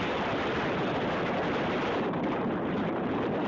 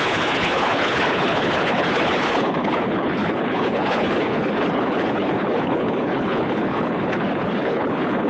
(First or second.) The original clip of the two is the first